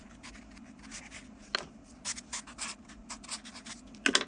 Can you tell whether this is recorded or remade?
recorded